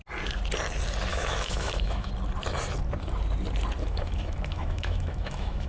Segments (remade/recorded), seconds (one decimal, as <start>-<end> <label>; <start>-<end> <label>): 0.0-1.1 recorded; 1.1-2.1 remade; 2.1-3.8 recorded; 3.8-5.7 remade